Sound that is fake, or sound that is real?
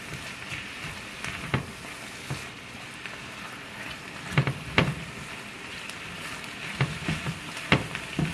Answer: real